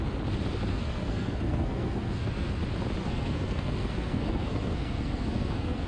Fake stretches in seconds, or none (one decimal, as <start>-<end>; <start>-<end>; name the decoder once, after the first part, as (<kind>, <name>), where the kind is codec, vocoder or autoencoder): 0.7-2.5 (codec, SNAC); 3.0-5.9